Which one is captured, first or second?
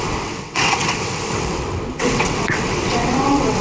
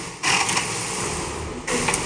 second